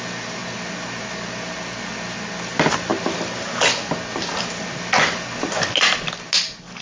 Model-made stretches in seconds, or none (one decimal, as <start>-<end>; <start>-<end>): none